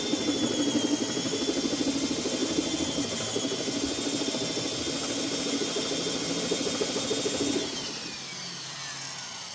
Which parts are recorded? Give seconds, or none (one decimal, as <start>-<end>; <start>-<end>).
0.0-9.5